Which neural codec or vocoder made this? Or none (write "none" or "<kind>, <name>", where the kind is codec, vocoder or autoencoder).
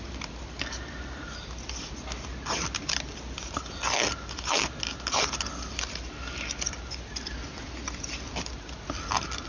none